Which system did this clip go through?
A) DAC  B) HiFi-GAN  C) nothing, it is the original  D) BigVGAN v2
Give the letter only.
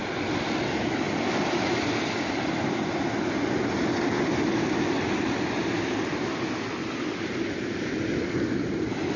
C